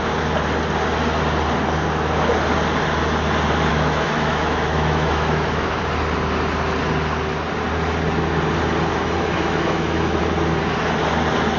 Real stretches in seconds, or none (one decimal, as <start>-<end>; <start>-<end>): 0.0-3.7; 5.8-8.9; 10.2-11.6